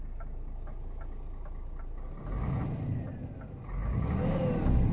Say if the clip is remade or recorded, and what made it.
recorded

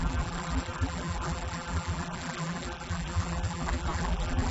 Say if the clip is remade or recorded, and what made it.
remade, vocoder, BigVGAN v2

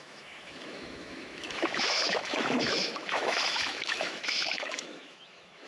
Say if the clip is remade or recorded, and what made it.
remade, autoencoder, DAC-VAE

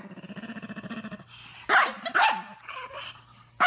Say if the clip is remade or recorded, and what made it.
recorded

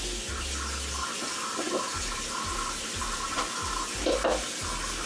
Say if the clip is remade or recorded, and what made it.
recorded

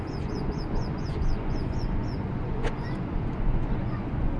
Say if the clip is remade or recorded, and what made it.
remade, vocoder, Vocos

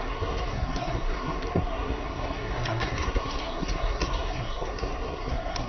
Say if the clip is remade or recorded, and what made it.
remade, codec, SNAC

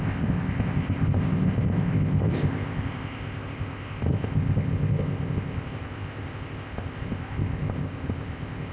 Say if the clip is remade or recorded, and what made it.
remade, codec, ZipCodec